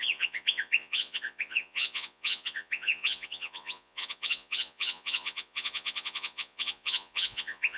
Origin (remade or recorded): remade